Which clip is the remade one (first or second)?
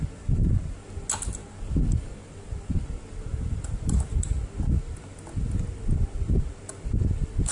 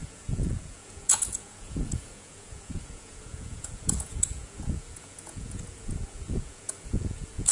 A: second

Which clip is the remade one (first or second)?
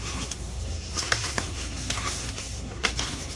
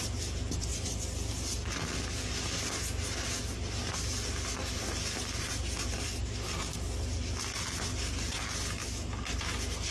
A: first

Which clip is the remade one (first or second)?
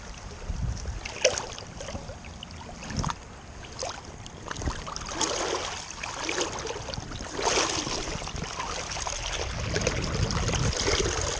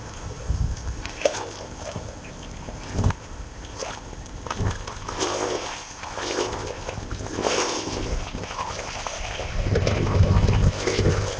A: second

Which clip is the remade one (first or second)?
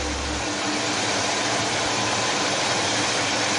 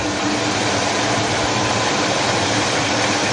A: second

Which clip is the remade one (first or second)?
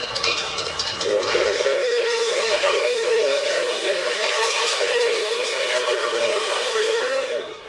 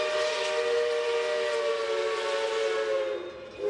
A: first